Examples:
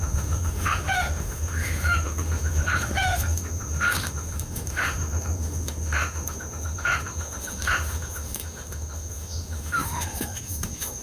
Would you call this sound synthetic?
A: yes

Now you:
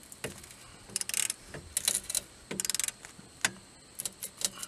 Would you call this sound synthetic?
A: no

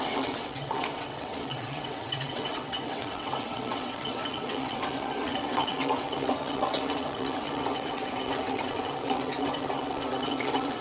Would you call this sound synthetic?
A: yes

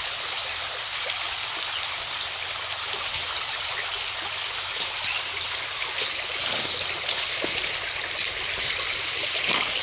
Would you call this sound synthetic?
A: no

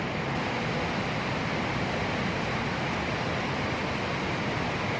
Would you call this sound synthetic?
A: no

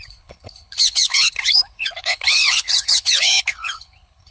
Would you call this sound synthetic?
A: yes